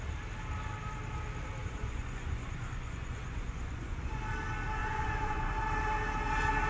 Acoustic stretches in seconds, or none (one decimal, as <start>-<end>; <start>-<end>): 0.0-1.6; 4.2-4.8; 5.6-6.7